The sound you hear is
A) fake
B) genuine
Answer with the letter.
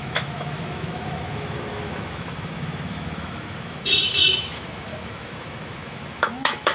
A